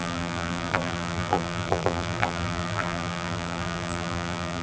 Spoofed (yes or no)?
yes